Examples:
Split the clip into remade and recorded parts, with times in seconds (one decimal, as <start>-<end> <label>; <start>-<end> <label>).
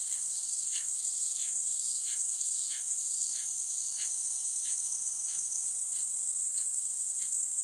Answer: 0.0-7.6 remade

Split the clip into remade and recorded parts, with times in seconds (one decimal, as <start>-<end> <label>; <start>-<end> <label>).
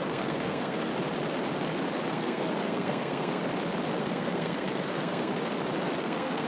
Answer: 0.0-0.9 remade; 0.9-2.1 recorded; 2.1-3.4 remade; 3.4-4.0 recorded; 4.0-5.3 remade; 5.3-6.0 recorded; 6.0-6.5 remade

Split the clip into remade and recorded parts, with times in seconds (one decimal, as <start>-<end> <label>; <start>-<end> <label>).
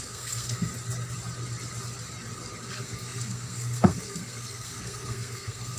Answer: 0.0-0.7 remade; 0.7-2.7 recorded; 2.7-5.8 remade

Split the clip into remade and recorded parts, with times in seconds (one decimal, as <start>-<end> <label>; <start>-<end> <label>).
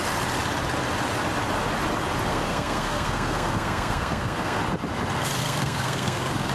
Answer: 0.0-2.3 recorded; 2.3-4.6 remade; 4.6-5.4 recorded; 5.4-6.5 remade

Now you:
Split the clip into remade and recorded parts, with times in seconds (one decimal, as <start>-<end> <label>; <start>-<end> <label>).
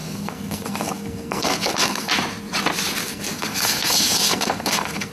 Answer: 0.0-2.1 remade; 2.1-3.0 recorded; 3.0-5.1 remade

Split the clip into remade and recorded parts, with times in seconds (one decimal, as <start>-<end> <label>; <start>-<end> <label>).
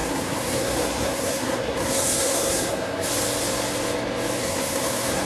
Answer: 0.0-3.1 remade; 3.1-4.4 recorded; 4.4-5.2 remade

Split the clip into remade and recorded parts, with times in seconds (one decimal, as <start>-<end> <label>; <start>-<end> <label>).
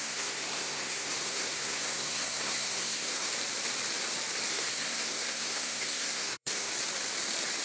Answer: 0.0-3.3 remade; 3.3-4.5 recorded; 4.5-6.7 remade; 6.7-7.6 recorded